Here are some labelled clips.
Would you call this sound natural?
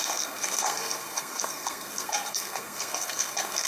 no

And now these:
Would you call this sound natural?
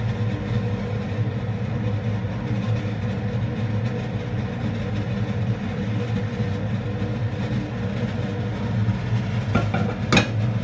yes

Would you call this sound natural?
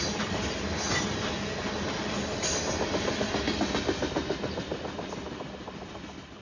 yes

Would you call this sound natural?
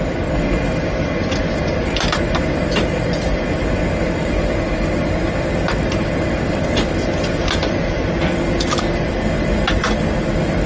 yes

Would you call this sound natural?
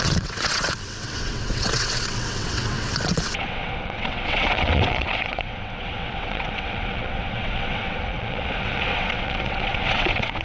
no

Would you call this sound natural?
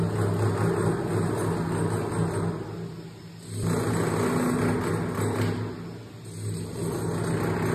yes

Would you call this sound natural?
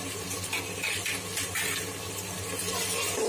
yes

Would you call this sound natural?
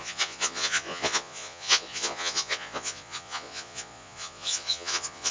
no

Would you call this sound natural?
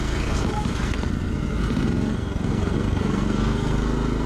no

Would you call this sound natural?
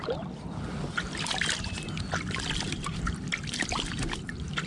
yes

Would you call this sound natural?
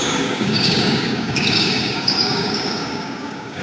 no